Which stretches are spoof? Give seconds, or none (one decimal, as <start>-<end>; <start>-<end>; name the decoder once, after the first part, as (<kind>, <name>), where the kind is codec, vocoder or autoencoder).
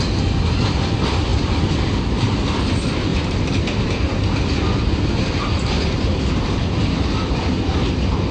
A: none